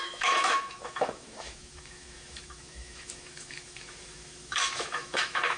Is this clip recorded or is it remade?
remade